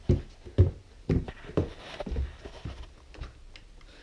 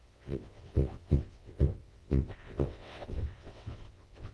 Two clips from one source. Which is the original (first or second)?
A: first